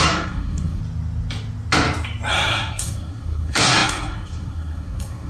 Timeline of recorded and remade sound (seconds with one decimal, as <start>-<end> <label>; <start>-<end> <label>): 0.0-0.8 remade; 0.8-2.3 recorded; 2.3-5.3 remade